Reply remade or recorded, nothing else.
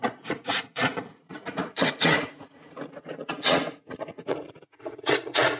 remade